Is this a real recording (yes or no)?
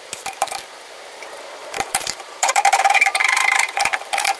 no